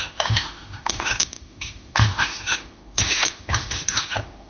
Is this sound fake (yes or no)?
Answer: yes